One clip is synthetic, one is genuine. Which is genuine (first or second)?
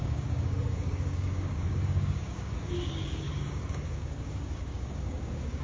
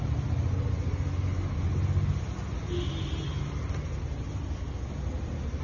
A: second